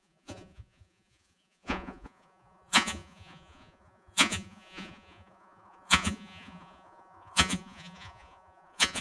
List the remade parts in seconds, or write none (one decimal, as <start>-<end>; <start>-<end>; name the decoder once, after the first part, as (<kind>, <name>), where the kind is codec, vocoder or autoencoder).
0.0-9.0 (vocoder, Vocos)